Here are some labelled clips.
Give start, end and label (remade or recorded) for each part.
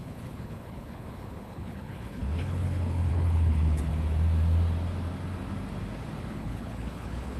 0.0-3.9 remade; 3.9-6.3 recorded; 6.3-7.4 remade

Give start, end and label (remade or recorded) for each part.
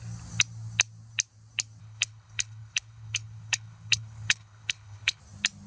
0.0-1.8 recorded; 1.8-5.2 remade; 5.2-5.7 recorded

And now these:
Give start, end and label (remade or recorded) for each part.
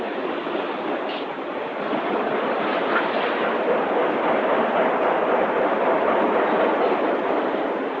0.0-8.0 recorded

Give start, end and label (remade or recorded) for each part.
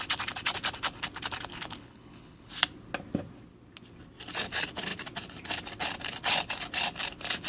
0.0-1.5 recorded; 1.5-2.5 remade; 2.5-7.5 recorded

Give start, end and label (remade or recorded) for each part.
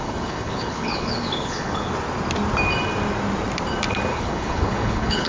0.0-1.9 remade; 1.9-4.1 recorded; 4.1-5.3 remade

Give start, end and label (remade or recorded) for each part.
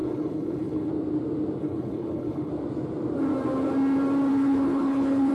0.0-0.9 remade; 0.9-1.6 recorded; 1.6-2.5 remade; 2.5-4.3 recorded; 4.3-5.3 remade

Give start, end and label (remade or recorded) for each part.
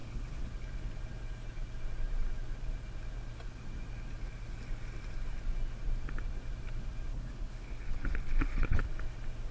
0.0-0.5 remade; 0.5-7.1 recorded; 7.1-8.9 remade; 8.9-9.5 recorded